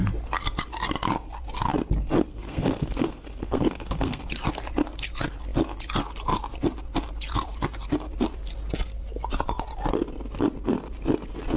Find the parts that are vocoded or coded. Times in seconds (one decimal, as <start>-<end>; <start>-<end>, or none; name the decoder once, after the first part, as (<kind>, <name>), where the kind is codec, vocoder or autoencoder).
2.3-4.2 (codec, SNAC)